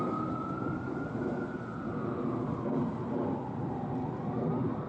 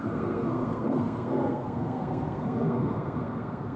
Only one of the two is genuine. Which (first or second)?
first